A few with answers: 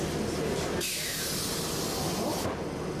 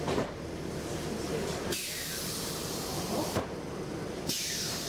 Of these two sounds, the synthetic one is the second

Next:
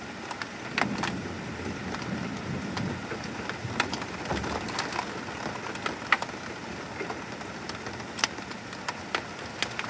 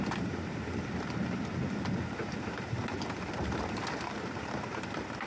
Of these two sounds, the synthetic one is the second